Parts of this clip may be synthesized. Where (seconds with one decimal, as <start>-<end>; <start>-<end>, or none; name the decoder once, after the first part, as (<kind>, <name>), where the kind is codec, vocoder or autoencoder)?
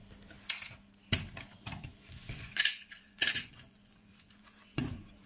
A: 1.9-5.3 (vocoder, Vocos)